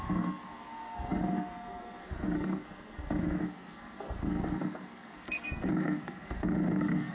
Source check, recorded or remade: remade